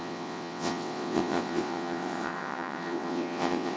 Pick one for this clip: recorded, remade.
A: remade